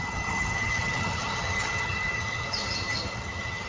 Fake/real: fake